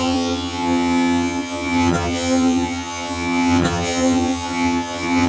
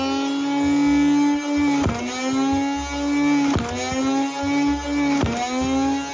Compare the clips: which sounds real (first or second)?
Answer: second